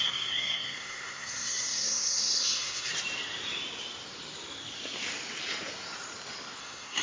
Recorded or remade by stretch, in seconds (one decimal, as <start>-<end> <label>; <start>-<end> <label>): 0.0-2.9 remade; 2.9-6.6 recorded; 6.6-7.0 remade